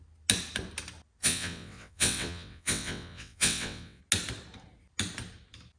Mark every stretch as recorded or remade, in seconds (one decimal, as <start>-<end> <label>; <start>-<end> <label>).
0.0-1.2 recorded; 1.2-4.0 remade; 4.0-5.8 recorded